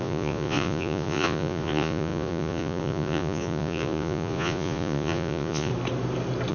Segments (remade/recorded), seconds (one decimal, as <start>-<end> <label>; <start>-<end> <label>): 0.0-5.7 remade; 5.7-6.5 recorded